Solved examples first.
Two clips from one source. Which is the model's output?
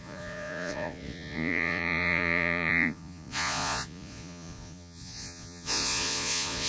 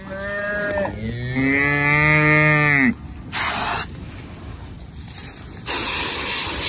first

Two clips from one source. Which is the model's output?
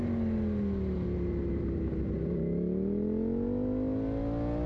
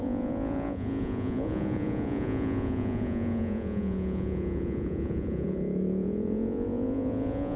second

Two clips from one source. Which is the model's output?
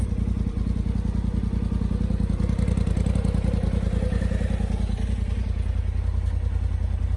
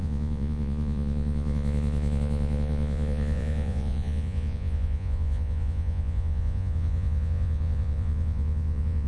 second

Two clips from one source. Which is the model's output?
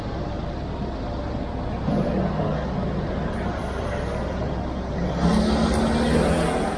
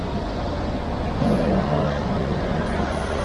second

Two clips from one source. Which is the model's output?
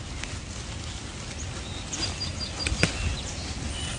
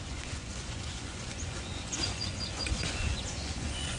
second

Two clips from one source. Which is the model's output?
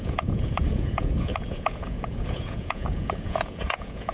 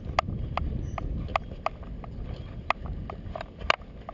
first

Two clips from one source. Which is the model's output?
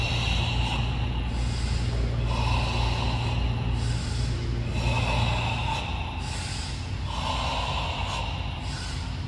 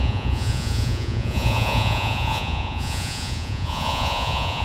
second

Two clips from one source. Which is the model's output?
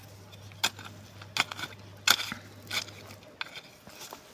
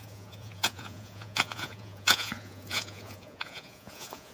second